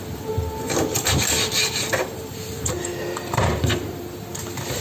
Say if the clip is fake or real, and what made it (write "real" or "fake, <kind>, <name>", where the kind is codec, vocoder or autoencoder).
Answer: fake, vocoder, BigVGAN v2